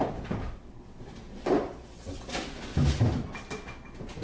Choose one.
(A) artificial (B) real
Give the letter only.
B